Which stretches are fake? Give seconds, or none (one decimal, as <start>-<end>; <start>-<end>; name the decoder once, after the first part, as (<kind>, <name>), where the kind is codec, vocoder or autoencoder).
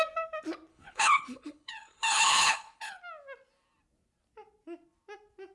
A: 0.7-3.0 (codec, HILCodec)